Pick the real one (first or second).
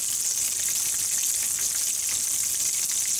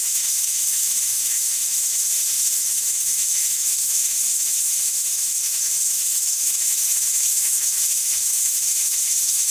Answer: first